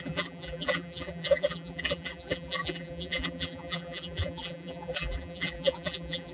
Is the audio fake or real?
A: fake